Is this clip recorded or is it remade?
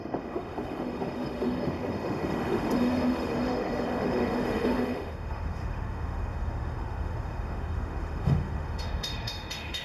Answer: remade